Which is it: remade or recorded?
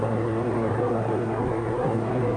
remade